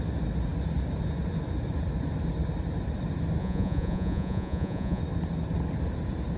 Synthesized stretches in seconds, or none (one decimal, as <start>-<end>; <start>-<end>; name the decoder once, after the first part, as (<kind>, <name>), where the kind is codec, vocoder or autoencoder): 3.4-5.0 (vocoder, Vocos)